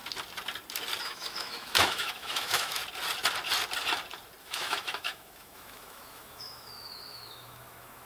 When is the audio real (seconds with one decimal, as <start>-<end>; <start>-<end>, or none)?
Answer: 0.0-1.0; 2.8-4.4